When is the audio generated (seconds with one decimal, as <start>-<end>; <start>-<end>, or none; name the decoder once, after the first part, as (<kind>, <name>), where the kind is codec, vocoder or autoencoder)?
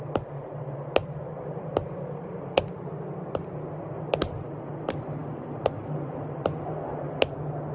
none